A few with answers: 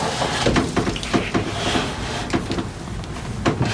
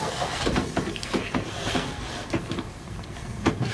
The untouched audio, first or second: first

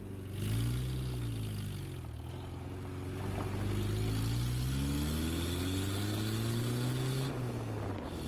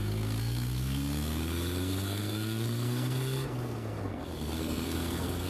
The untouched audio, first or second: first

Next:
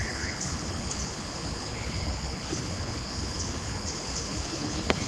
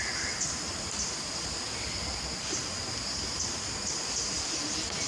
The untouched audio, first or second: second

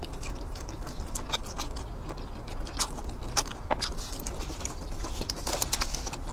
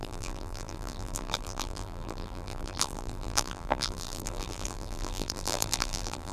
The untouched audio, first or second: first